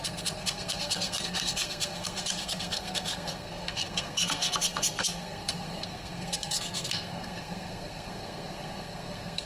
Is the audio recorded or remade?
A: remade